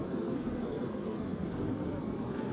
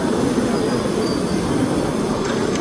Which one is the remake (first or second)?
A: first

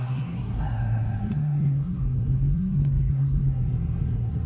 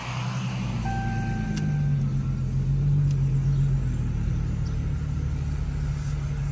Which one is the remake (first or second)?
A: first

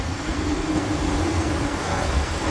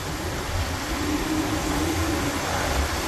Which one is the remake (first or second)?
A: first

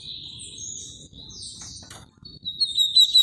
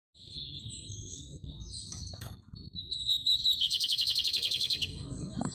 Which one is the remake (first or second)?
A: second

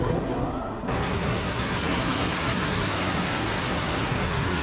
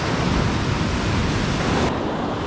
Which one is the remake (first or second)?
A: first